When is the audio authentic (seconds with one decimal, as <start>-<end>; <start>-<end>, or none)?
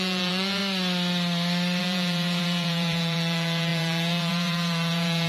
0.6-1.8